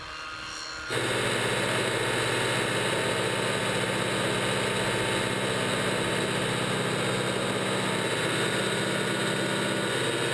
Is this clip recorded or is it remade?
recorded